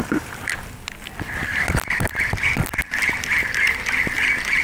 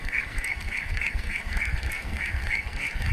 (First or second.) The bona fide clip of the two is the first